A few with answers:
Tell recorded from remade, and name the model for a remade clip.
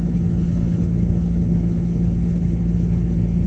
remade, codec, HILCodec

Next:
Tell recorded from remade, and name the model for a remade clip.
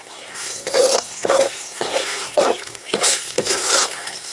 remade, codec, SNAC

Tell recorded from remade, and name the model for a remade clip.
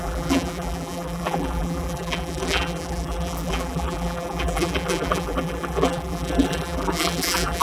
remade, vocoder, BigVGAN v2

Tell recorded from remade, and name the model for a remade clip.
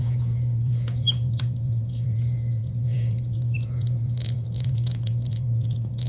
remade, vocoder, Vocos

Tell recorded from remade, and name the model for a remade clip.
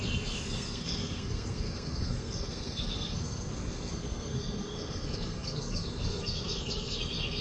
remade, codec, SNAC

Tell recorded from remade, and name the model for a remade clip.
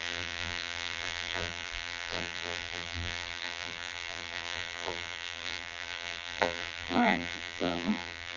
remade, vocoder, BigVGAN v2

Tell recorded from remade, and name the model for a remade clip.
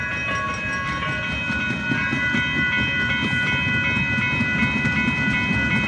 recorded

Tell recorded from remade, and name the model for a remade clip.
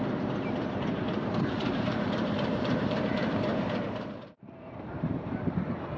remade, vocoder, BigVGAN v2